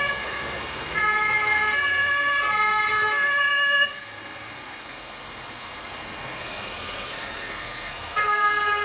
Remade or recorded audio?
remade